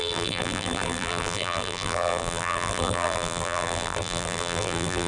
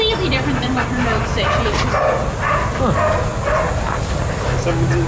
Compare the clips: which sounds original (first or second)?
second